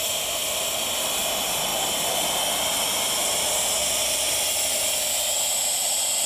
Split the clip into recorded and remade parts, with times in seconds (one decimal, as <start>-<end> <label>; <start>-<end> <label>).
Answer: 0.0-6.3 recorded